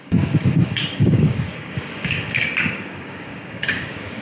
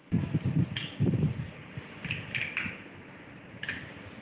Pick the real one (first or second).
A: second